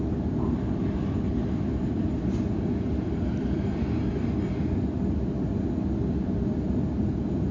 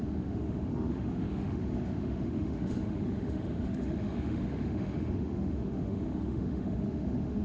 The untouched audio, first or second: first